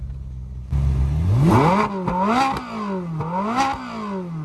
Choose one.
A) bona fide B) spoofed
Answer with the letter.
A